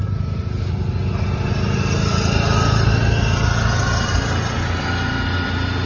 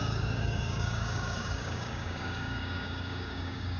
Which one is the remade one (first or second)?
second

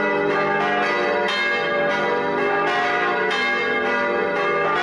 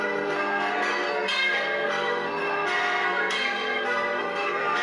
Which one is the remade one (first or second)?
second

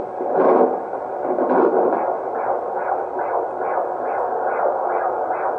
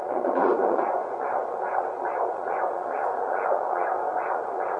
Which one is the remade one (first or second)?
second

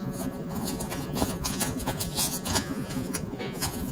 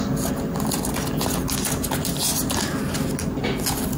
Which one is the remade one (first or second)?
first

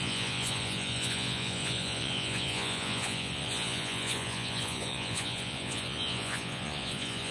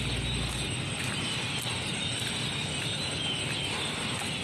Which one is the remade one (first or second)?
first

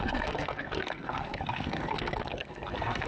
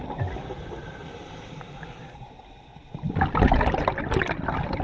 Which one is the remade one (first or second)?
first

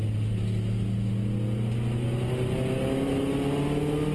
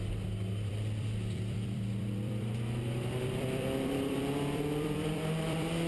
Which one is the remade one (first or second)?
second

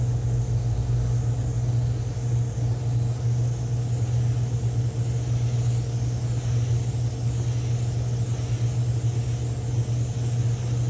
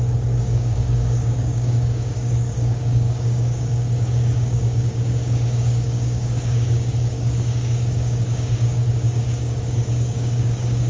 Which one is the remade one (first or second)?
second